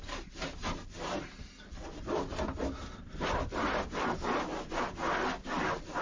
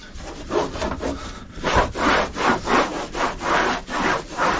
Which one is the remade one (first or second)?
second